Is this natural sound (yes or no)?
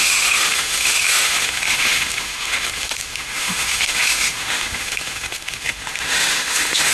no